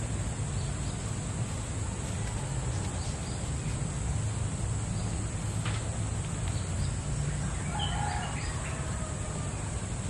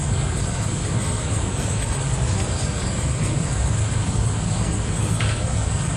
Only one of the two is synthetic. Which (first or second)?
second